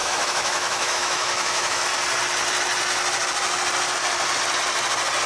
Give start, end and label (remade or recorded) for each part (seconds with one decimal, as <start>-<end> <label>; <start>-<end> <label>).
0.0-1.9 remade; 1.9-5.3 recorded